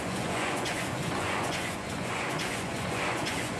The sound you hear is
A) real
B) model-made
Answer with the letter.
B